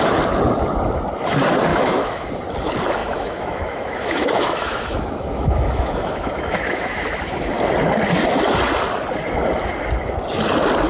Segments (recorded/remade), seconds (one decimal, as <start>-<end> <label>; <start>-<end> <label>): 0.0-1.7 recorded; 1.7-2.3 remade; 2.3-3.0 recorded; 3.0-7.5 remade; 7.5-10.9 recorded